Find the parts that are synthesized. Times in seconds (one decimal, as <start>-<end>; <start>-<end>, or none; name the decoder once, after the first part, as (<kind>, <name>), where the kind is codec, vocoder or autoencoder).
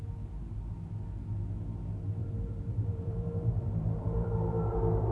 2.2-4.3 (vocoder, BigVGAN v2)